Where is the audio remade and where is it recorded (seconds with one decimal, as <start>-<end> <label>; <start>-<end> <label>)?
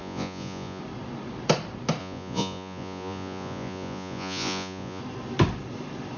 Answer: 0.0-0.8 remade; 0.8-2.0 recorded; 2.0-5.0 remade; 5.0-6.2 recorded